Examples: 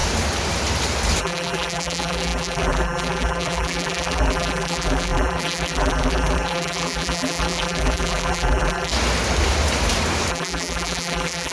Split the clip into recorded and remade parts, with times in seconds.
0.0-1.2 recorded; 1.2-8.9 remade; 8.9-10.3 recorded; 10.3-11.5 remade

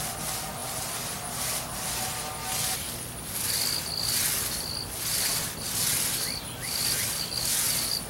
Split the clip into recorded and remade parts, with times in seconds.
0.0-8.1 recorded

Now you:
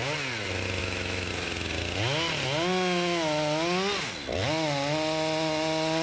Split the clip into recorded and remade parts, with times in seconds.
0.0-0.8 recorded; 0.8-1.3 remade; 1.3-6.0 recorded

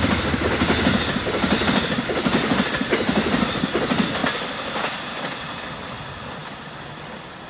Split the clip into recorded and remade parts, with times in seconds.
0.0-7.5 recorded